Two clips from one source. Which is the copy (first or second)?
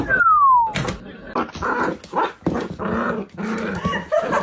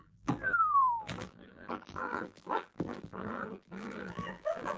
second